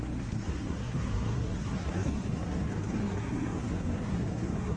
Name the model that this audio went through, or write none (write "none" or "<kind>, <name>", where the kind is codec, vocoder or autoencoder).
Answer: codec, SNAC